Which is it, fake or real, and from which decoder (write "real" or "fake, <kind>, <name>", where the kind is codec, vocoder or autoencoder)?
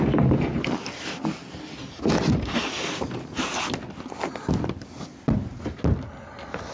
real